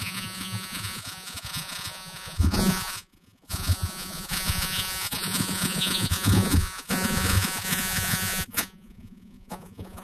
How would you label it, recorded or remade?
remade